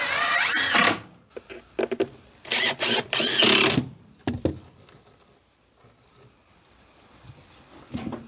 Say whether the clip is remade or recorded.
recorded